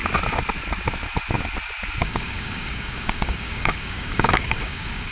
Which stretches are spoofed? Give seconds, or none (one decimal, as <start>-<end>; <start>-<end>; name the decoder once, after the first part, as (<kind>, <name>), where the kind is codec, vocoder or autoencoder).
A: 2.0-5.1 (codec, DAC)